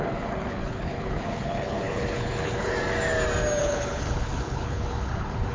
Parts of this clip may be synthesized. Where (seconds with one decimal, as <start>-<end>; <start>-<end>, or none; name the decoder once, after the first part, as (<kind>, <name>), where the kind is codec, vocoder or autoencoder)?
0.0-2.7 (codec, HILCodec); 3.6-5.5